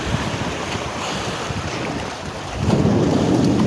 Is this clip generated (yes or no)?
no